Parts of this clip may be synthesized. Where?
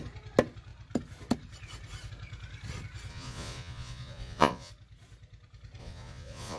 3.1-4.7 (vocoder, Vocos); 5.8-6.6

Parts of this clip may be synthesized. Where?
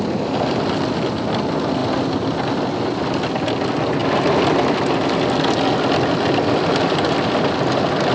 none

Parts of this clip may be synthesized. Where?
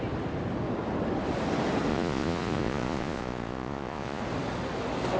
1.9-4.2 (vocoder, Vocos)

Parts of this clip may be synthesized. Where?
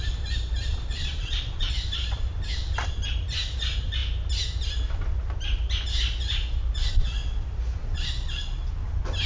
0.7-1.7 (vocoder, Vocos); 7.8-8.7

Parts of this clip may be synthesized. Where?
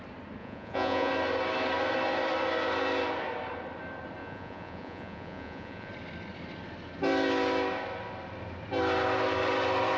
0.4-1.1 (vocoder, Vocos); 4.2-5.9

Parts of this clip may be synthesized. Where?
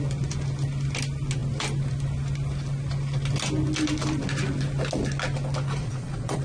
5.8-6.4 (vocoder, Vocos)